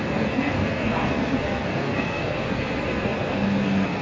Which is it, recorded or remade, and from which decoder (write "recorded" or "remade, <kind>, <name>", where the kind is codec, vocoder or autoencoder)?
remade, codec, SNAC